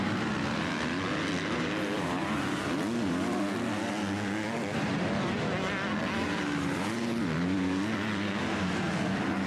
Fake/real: real